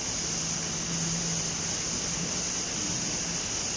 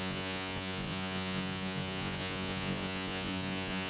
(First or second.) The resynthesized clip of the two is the second